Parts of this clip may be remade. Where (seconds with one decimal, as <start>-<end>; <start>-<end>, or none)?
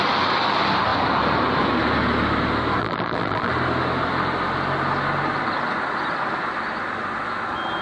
2.8-3.5